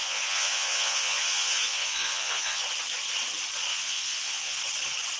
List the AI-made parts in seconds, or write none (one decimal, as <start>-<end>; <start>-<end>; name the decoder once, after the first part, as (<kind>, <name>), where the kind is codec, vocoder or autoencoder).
0.0-2.6 (vocoder, Vocos); 3.7-4.6